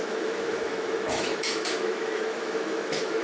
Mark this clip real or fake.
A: fake